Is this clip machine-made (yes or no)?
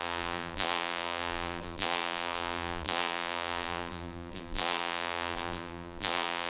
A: yes